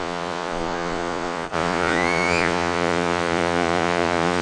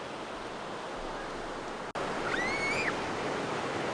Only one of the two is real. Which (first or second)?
second